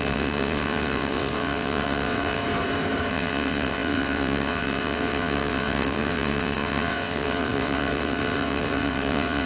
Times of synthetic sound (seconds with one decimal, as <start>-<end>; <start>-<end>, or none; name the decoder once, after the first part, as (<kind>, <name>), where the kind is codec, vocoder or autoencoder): 0.0-2.4 (vocoder, WaveNeXt); 3.1-9.5